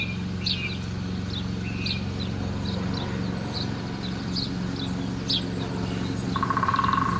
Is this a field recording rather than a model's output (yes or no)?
yes